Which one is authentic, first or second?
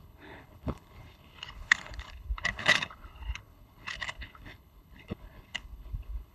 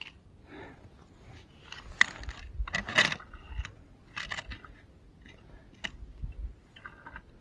second